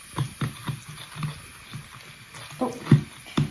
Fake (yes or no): no